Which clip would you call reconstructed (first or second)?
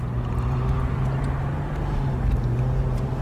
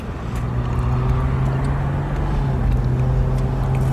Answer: first